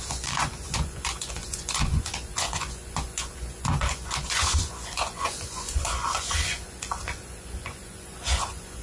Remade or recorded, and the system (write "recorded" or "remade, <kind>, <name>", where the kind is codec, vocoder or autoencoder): remade, vocoder, Vocos